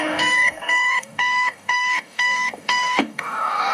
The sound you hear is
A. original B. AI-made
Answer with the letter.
B